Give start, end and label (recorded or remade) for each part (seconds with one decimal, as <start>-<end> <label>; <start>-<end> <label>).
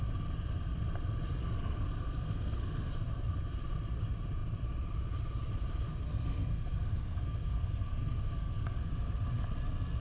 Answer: 0.0-1.4 recorded; 1.4-2.9 remade; 2.9-5.9 recorded; 5.9-8.9 remade; 8.9-10.0 recorded